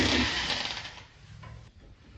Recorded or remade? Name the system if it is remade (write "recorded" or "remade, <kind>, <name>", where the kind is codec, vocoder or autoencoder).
recorded